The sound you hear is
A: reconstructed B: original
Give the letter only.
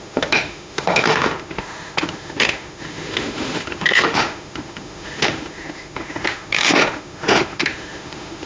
A